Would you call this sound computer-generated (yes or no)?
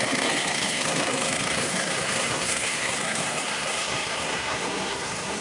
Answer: yes